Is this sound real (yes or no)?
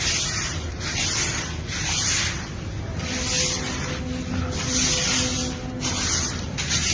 yes